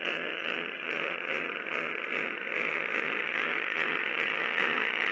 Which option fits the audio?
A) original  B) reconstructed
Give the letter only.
B